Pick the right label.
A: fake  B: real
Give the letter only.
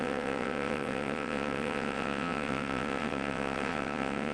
A